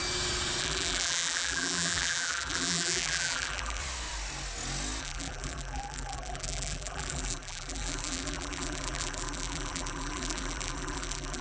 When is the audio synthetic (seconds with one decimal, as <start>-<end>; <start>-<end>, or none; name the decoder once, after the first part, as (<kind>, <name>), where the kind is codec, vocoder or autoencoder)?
0.6-3.8 (vocoder, BigVGAN v2); 5.0-11.4